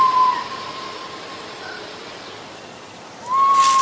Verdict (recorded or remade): recorded